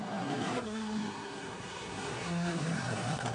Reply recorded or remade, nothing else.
remade